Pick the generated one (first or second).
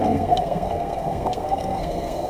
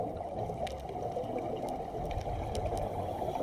first